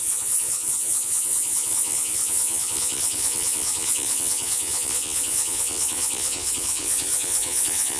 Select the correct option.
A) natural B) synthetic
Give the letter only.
B